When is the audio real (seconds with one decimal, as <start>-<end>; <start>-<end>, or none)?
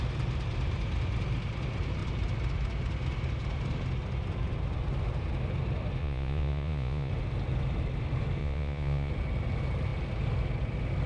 0.0-6.0; 7.1-8.4; 9.1-11.1